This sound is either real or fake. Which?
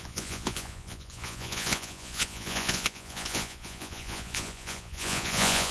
fake